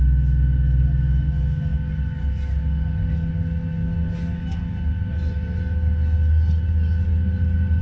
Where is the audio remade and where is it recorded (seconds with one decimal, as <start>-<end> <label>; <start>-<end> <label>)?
0.0-7.8 recorded